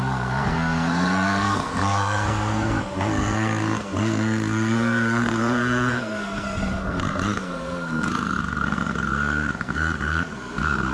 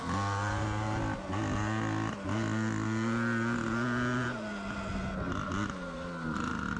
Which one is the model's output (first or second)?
first